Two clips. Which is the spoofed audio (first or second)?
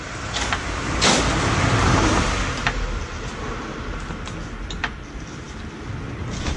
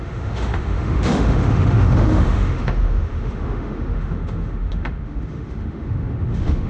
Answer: second